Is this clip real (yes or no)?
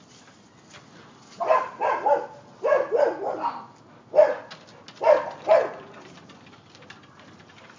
yes